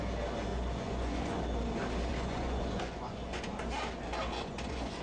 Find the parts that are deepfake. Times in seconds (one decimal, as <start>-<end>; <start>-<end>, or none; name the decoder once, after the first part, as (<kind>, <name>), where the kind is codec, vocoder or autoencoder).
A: 0.5-1.4 (vocoder, Vocos); 2.1-3.5; 4.3-5.0